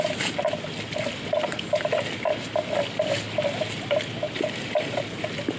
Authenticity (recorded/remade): recorded